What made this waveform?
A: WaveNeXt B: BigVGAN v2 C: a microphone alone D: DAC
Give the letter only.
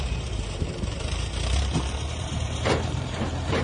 B